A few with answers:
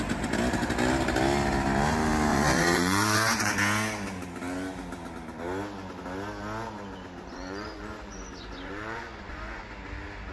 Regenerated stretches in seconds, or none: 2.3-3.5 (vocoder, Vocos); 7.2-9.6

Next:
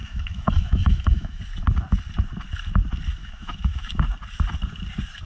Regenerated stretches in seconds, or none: 0.0-1.4 (autoencoder, DAC-VAE); 3.2-4.0